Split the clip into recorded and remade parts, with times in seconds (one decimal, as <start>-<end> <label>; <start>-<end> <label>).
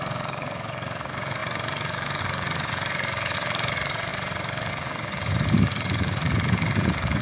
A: 0.0-7.2 remade